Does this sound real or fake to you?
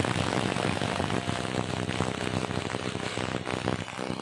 real